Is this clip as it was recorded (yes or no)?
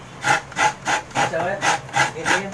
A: yes